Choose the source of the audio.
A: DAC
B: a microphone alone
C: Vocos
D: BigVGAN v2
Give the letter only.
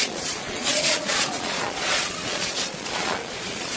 C